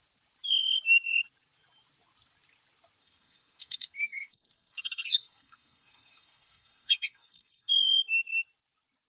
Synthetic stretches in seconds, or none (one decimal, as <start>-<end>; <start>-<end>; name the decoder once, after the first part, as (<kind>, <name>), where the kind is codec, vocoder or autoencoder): 3.0-7.7 (codec, SNAC)